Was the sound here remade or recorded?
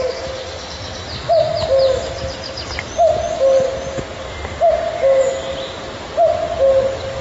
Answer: recorded